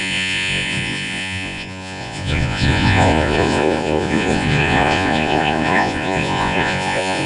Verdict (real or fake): fake